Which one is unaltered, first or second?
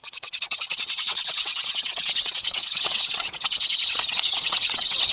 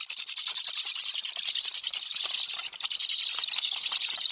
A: second